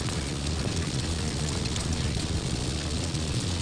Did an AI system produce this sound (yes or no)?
yes